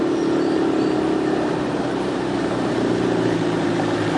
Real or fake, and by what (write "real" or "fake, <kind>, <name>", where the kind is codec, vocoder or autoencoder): fake, vocoder, BigVGAN v2